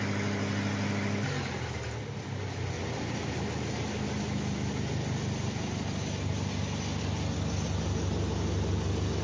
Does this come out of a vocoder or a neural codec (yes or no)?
no